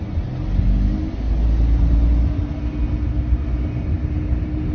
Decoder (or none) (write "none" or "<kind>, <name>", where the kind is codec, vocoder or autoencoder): none